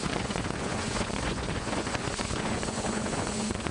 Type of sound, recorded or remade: remade